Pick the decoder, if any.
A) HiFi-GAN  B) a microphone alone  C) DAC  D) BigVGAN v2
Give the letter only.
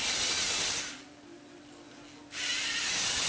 B